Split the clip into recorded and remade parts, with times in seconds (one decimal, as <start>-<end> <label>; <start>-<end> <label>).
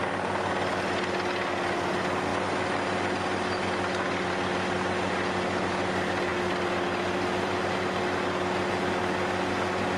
0.0-10.0 recorded